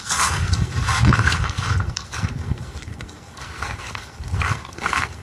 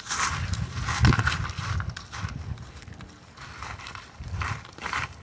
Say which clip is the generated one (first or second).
first